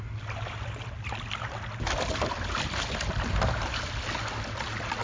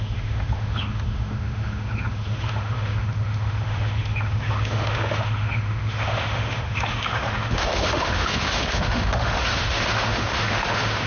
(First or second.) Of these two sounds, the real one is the first